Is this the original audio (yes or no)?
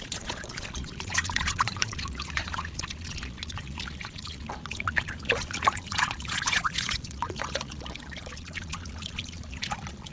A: no